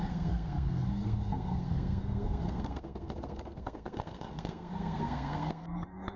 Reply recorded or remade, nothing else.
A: remade